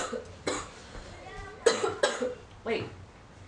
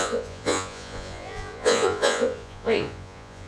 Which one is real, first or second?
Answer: first